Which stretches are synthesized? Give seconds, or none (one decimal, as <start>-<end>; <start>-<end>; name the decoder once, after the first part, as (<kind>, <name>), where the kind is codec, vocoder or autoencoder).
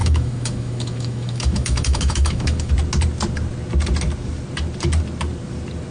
0.0-2.7 (autoencoder, DAC-VAE)